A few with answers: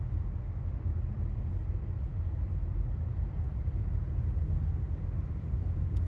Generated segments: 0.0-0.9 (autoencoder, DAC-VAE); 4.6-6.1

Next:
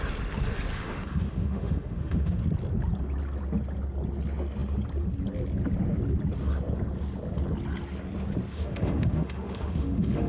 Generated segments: 0.7-2.4 (autoencoder, DAC-VAE); 8.5-10.3

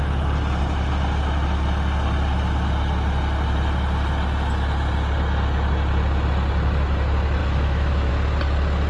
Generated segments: 7.4-8.1 (autoencoder, DAC-VAE)

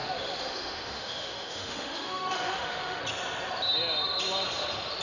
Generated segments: 0.0-3.0 (autoencoder, DAC-VAE)

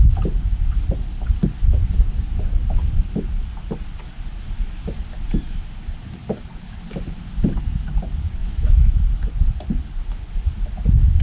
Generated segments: 8.4-9.0 (autoencoder, DAC-VAE)

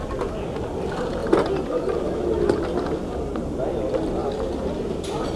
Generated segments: none

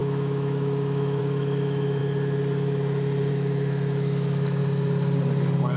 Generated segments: 0.0-2.0 (autoencoder, DAC-VAE); 3.3-4.6